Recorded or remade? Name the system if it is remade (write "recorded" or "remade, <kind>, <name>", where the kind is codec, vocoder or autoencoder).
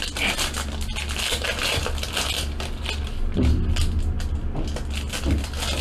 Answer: recorded